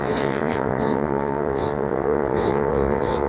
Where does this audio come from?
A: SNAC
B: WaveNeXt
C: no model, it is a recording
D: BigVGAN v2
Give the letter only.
B